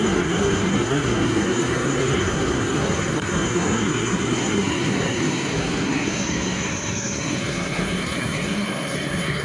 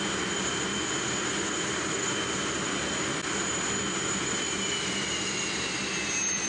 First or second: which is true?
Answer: second